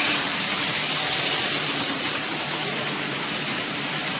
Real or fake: fake